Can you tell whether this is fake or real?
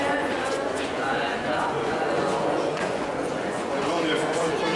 fake